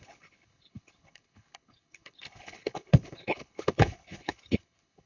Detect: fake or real fake